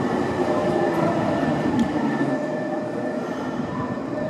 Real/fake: fake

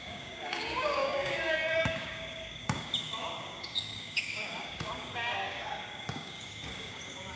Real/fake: fake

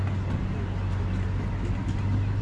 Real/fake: real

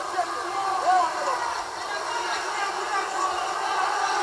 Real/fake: real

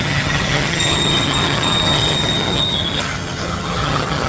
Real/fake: fake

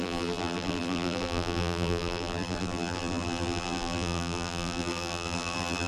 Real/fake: fake